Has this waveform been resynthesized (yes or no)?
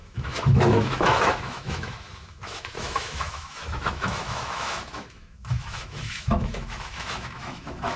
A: yes